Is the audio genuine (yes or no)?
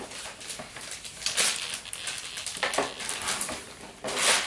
yes